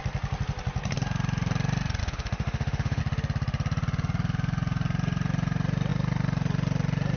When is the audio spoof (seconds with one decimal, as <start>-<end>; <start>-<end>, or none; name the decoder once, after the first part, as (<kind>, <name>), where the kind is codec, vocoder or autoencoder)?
2.0-3.0 (autoencoder, DAC-VAE)